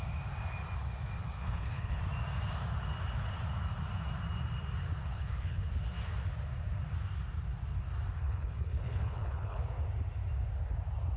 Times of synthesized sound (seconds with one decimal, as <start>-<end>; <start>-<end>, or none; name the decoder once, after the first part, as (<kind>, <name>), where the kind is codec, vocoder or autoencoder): 1.2-2.0 (codec, HILCodec); 5.0-5.7; 8.2-9.6